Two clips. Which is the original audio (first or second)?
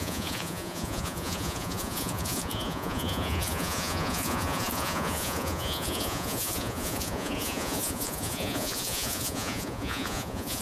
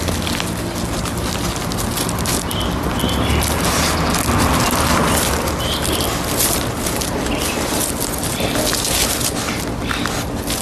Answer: second